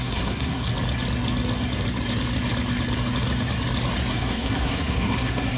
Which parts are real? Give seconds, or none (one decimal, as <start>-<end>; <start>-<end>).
0.7-4.1